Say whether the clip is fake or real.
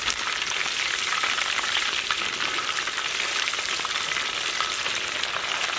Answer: real